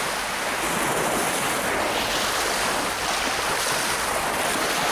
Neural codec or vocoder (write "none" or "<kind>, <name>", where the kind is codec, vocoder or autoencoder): none